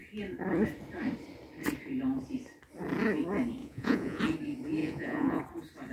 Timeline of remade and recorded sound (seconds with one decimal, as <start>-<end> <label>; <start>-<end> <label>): 0.0-3.6 recorded; 3.6-4.2 remade; 4.2-4.8 recorded; 4.8-5.4 remade; 5.4-5.9 recorded